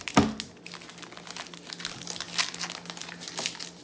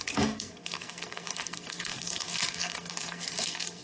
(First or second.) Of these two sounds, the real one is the first